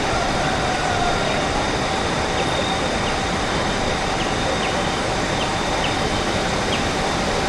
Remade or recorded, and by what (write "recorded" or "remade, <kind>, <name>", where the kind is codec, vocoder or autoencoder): remade, vocoder, BigVGAN v2